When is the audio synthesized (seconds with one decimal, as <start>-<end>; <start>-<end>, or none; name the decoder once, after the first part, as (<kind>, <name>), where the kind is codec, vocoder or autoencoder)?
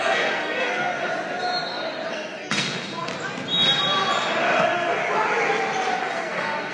0.0-1.1 (codec, SNAC); 2.1-3.1; 4.4-5.0; 6.0-6.7